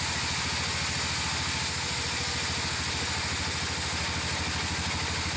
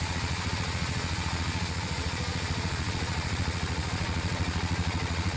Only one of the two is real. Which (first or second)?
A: first